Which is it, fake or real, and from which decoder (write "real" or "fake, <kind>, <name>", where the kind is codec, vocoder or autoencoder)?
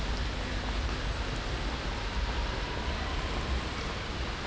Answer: real